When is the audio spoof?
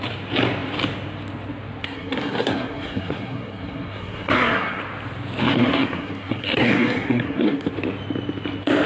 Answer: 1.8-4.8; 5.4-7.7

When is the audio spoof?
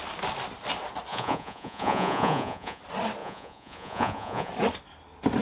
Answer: 1.1-2.8; 3.2-4.5